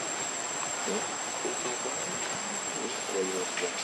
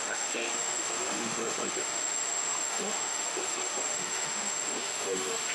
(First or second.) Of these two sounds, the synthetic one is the second